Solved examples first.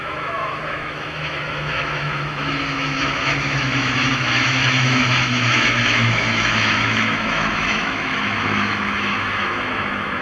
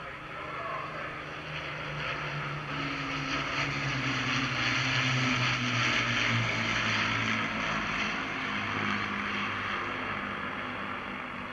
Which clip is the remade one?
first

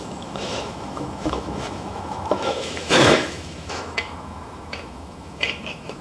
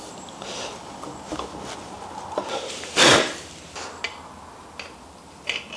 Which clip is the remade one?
first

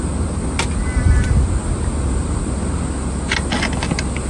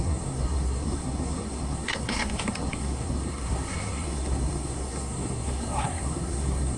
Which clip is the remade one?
second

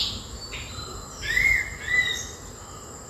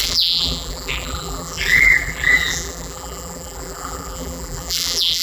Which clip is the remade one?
second